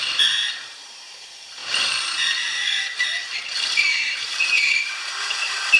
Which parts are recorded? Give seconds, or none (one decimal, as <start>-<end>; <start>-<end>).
none